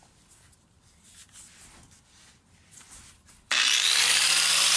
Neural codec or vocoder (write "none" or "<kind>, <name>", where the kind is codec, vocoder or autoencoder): none